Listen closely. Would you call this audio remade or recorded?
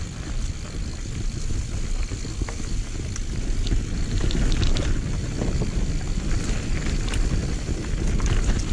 recorded